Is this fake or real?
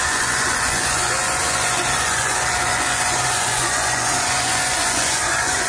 fake